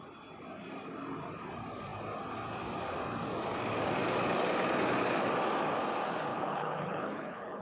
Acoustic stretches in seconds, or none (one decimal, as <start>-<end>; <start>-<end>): 0.0-6.3